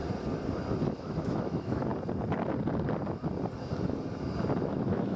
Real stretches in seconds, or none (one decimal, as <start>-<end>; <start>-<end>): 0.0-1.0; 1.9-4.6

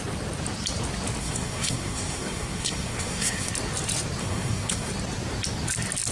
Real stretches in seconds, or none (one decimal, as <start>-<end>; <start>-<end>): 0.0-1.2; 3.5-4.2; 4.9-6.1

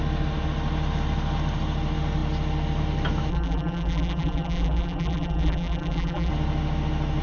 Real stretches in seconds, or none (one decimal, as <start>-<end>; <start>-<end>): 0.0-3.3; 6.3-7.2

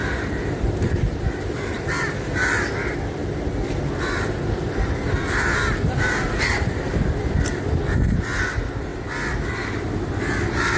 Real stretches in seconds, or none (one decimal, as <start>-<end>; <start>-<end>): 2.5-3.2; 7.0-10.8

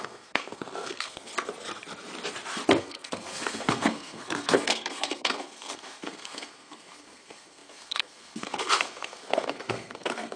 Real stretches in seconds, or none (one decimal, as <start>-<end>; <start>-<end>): 1.3-2.8

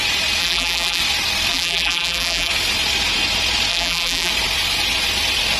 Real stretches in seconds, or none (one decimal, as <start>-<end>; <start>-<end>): 0.0-0.4; 1.0-1.5; 2.5-3.7; 4.3-5.6